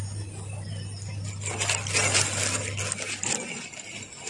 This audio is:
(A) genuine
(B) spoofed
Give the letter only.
A